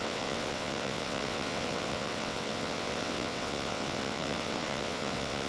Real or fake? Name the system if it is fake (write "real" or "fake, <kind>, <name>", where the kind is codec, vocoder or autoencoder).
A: fake, vocoder, WaveNeXt